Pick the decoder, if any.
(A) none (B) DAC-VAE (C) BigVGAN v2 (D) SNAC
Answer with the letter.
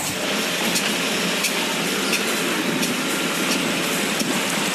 A